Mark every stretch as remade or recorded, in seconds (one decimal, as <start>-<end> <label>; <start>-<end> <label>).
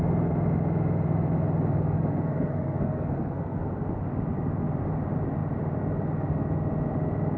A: 0.0-1.7 recorded; 1.7-3.8 remade; 3.8-7.4 recorded